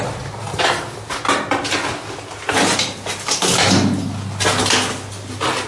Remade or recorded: recorded